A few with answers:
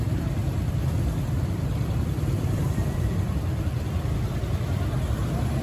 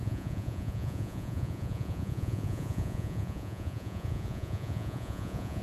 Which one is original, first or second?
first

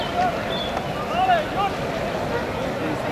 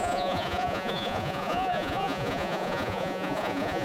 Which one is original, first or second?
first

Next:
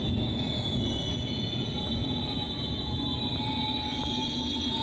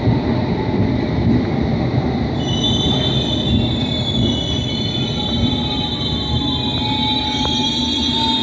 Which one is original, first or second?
second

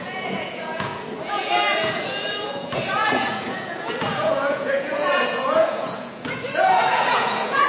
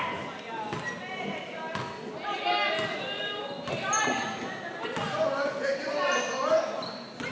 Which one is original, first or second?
second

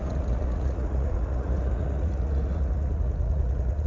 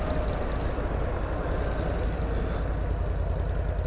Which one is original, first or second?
second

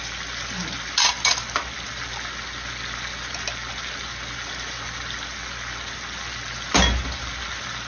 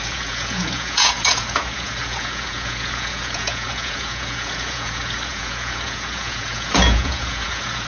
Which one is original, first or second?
first